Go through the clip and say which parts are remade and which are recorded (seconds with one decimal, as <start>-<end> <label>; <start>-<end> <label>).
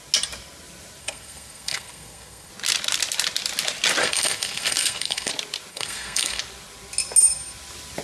0.0-1.0 recorded; 1.0-2.5 remade; 2.5-4.0 recorded; 4.0-5.3 remade; 5.3-5.7 recorded; 5.7-6.4 remade; 6.4-8.0 recorded